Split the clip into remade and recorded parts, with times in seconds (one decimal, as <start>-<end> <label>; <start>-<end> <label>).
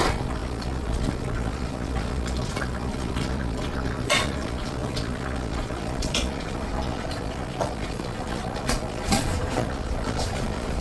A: 0.0-10.8 remade